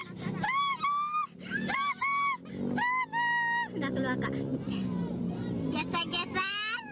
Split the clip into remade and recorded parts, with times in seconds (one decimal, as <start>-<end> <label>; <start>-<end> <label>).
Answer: 0.0-6.9 recorded